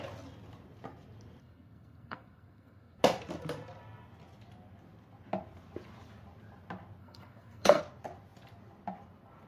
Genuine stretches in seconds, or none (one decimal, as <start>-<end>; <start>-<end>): 0.0-1.4; 3.0-7.0; 7.8-9.5